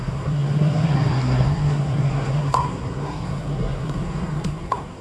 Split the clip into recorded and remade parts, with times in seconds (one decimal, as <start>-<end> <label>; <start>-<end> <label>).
0.0-5.0 remade